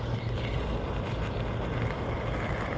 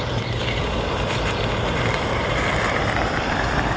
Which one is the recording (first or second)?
first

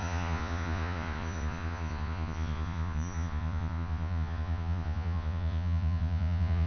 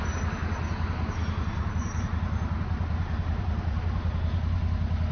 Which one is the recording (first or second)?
second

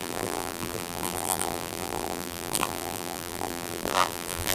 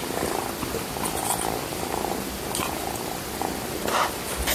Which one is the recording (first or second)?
second